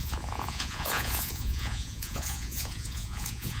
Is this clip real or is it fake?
fake